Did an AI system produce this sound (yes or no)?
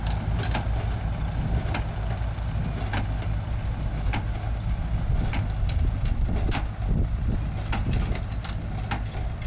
no